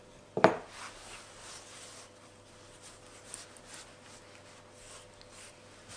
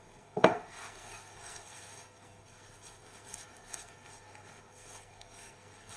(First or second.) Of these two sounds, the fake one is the second